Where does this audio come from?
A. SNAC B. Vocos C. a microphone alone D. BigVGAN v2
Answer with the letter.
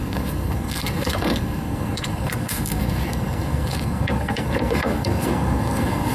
A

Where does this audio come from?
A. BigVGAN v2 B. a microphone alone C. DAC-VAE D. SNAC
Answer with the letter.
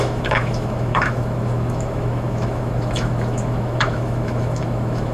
C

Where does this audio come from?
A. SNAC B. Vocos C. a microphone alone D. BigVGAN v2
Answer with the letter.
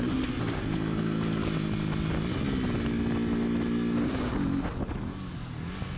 C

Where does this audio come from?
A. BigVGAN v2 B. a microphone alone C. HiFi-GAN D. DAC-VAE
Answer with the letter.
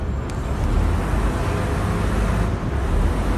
B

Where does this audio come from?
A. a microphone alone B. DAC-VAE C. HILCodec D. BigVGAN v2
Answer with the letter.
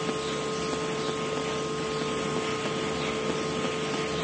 A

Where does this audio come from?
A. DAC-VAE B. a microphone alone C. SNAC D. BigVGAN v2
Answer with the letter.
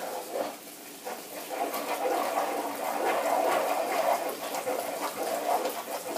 B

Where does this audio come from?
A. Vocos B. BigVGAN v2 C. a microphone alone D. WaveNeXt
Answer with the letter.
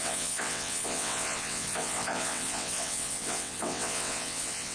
D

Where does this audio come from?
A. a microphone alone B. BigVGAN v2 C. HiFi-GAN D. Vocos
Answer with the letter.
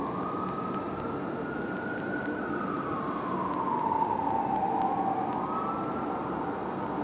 A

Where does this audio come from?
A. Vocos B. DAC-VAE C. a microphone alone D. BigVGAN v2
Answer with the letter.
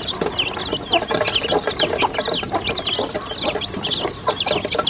C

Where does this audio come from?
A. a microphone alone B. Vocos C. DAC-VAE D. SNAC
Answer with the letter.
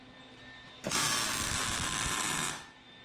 A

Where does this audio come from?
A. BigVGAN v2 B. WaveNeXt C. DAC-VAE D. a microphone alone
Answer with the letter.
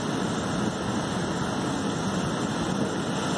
D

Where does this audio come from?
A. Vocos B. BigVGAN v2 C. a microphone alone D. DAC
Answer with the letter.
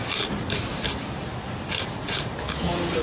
C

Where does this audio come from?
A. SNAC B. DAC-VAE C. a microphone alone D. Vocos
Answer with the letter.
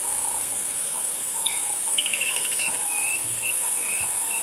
A